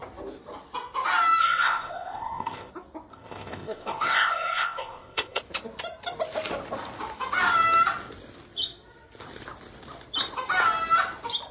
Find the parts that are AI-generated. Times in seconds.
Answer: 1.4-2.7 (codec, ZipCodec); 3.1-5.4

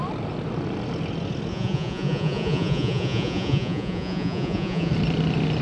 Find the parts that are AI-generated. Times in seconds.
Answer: 1.5-4.9 (vocoder, Vocos)